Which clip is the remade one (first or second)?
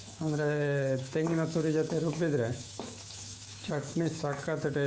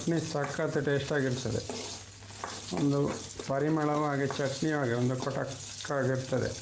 first